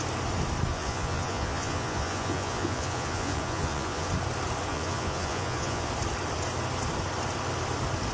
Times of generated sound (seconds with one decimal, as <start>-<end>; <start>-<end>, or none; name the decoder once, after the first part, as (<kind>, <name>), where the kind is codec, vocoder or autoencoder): 0.7-4.1 (vocoder, Vocos); 4.7-5.9